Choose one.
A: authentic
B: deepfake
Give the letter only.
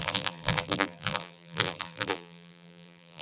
B